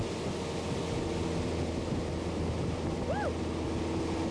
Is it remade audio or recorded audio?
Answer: recorded